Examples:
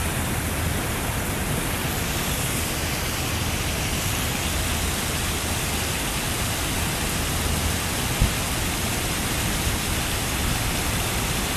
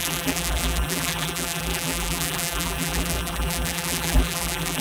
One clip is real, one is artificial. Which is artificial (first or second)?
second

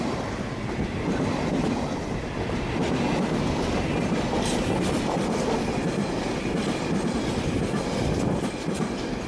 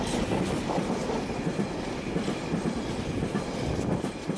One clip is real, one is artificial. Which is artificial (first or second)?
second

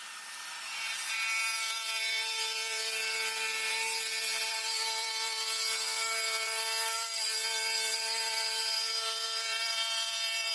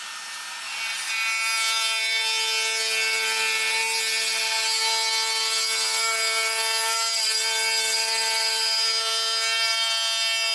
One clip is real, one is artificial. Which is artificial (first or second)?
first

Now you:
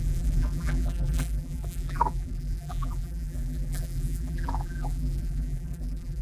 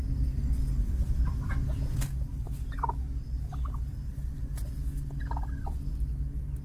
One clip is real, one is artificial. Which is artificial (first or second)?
first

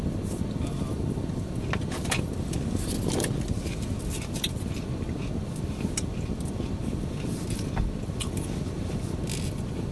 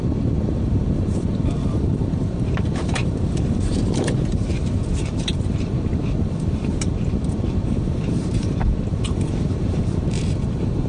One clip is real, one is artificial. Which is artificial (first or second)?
second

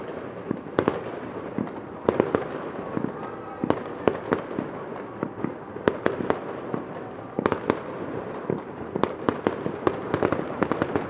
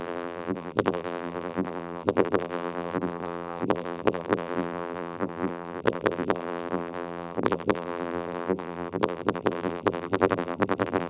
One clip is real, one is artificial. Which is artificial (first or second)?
second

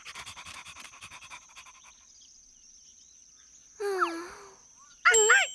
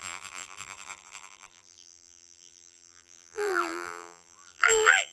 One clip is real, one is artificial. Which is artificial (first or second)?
second